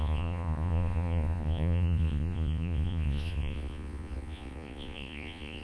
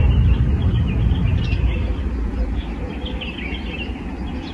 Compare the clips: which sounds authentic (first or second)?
second